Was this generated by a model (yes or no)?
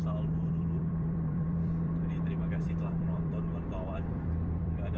yes